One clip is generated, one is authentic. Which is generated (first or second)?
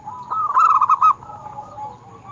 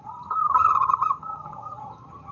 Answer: second